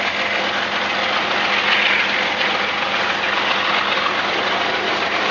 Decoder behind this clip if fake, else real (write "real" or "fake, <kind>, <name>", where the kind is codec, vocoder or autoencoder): real